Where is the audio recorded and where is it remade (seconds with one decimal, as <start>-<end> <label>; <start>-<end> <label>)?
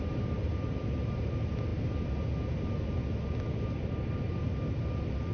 0.0-5.3 recorded